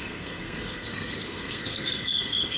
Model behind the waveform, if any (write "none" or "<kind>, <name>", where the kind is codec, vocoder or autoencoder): codec, SNAC